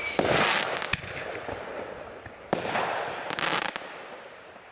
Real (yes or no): yes